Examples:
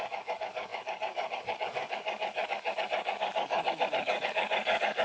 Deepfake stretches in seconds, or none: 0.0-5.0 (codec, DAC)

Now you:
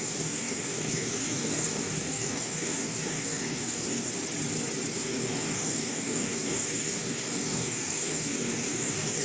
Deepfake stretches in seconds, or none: 0.0-4.1 (codec, DAC); 4.9-9.2

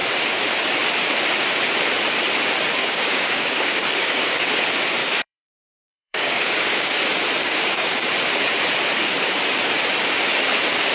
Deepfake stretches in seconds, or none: 2.8-4.5 (codec, DAC); 5.0-7.0; 7.4-8.1

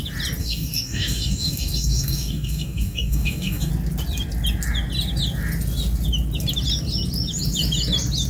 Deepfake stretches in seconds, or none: 0.4-3.7 (codec, DAC)

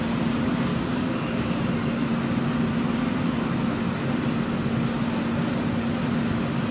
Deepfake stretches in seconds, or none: 0.7-1.6 (codec, DAC)

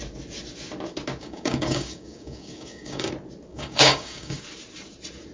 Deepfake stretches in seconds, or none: 1.2-3.1 (codec, DAC); 3.5-4.4

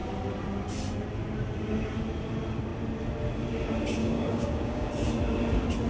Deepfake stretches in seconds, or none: 4.0-4.9 (codec, DAC)